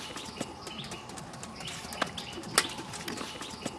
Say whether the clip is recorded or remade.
recorded